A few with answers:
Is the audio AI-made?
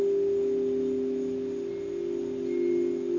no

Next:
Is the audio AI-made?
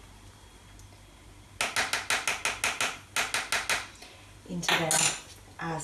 no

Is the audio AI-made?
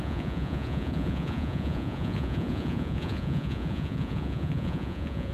yes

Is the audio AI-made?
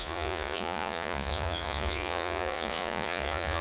yes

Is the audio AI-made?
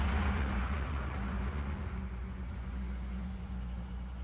yes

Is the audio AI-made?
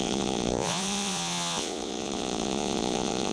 yes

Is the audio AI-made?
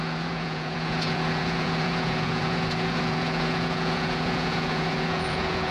yes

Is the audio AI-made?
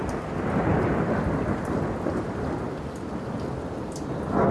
no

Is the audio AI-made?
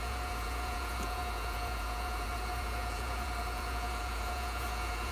yes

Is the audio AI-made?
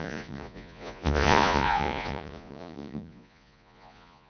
yes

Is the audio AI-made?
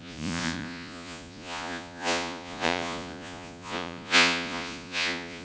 yes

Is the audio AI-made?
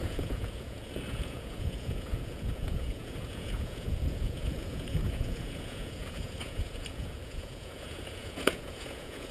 yes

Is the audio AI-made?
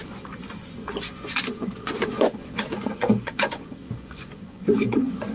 yes